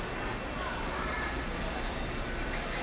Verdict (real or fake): real